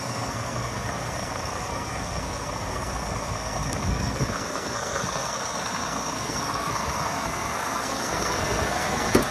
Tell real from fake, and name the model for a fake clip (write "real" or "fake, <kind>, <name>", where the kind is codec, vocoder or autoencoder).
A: fake, codec, SNAC